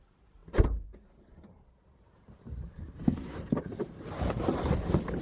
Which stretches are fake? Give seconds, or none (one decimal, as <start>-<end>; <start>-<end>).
none